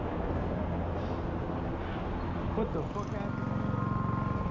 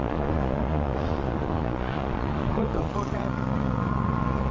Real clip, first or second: first